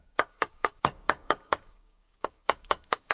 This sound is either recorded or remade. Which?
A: remade